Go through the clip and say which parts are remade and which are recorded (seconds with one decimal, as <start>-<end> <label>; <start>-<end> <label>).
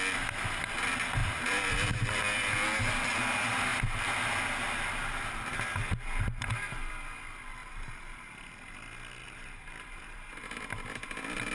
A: 0.0-1.2 recorded; 1.2-2.2 remade; 2.2-7.6 recorded; 7.6-8.4 remade; 8.4-9.2 recorded; 9.2-10.6 remade; 10.6-11.5 recorded